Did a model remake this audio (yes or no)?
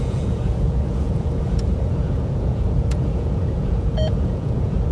yes